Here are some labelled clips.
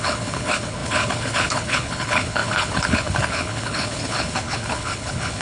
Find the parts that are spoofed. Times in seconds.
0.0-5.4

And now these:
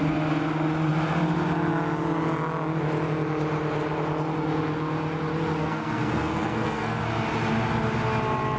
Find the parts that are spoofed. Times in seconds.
5.6-7.0

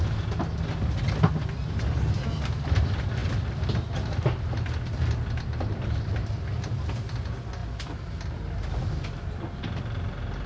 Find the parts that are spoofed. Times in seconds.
none